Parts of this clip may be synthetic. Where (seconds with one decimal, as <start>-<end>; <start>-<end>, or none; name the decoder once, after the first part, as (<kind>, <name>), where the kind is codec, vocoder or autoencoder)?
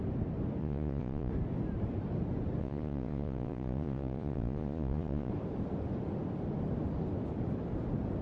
0.6-1.3 (vocoder, Vocos); 2.6-5.3